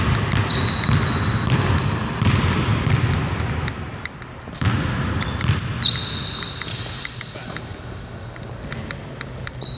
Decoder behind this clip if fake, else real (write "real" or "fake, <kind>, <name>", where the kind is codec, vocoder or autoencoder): real